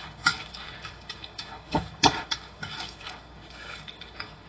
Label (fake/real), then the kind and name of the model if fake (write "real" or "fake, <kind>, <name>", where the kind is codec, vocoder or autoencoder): fake, codec, DAC